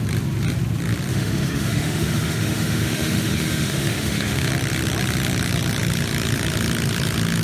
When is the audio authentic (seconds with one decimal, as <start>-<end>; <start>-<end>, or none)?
0.0-1.1; 4.5-7.4